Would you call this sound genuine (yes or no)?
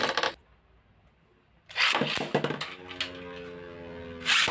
yes